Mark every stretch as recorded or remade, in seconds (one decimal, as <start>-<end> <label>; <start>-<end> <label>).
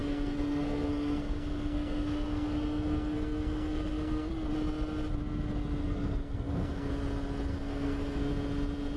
0.0-4.3 remade; 4.3-5.8 recorded; 5.8-6.9 remade; 6.9-7.5 recorded; 7.5-8.3 remade; 8.3-9.0 recorded